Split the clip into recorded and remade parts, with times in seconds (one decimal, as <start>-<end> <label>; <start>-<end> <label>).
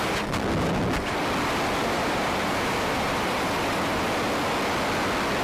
0.0-1.8 recorded; 1.8-3.5 remade; 3.5-5.4 recorded